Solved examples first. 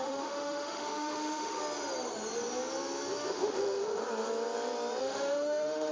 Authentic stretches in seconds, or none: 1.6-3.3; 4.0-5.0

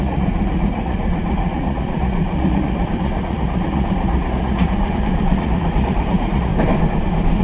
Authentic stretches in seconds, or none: 6.5-7.4

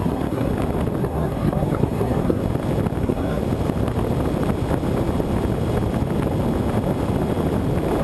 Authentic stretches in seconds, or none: 0.5-1.0; 2.4-3.0; 3.4-8.0